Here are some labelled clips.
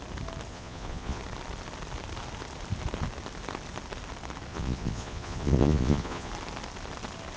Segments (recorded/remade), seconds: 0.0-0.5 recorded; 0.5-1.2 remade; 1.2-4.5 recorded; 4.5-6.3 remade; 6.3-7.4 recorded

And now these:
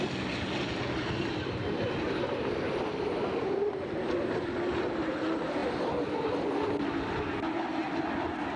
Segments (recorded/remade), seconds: 0.0-8.6 recorded

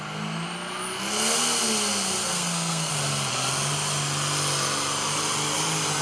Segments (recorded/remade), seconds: 0.0-2.2 recorded; 2.2-2.9 remade; 2.9-6.0 recorded

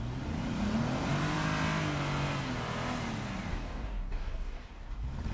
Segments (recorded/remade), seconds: 0.0-3.5 recorded; 3.5-4.7 remade; 4.7-5.3 recorded

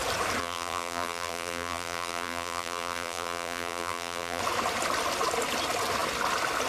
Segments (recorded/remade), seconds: 0.0-0.4 recorded; 0.4-4.4 remade; 4.4-6.7 recorded